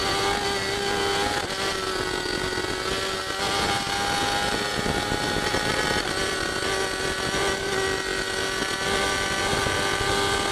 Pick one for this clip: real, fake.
real